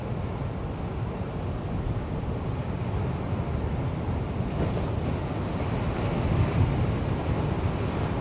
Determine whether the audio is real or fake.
real